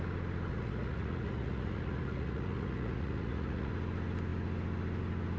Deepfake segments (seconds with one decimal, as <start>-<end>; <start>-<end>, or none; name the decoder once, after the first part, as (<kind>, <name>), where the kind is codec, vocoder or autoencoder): 0.5-3.7 (vocoder, Vocos)